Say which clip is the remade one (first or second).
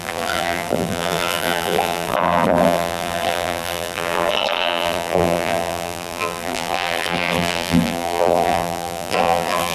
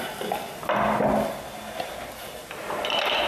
first